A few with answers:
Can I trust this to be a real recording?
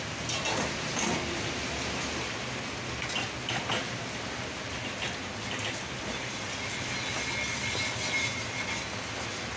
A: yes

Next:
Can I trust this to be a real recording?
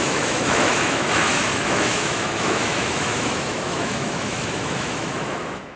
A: no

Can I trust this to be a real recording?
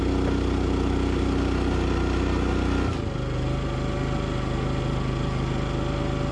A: yes